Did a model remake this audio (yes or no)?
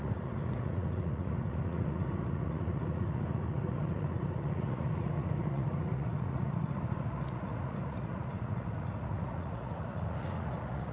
yes